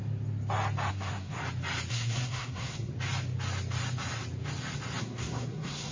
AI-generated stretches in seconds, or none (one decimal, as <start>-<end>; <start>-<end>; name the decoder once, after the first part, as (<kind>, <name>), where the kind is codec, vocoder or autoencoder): 0.9-1.4 (codec, SNAC); 1.9-2.9; 5.0-5.9